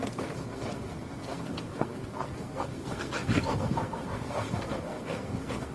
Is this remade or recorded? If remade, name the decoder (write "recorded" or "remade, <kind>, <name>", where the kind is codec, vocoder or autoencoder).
remade, codec, SNAC